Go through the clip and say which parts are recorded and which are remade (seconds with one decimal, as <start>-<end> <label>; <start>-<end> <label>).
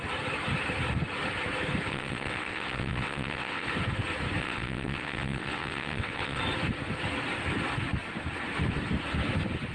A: 0.0-1.9 recorded; 1.9-3.7 remade; 3.7-4.4 recorded; 4.4-6.4 remade; 6.4-9.7 recorded